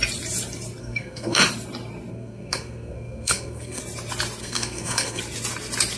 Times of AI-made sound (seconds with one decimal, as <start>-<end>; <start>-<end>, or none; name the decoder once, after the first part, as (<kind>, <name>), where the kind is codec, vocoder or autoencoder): 0.8-1.4 (codec, SNAC); 2.1-3.8; 4.4-5.2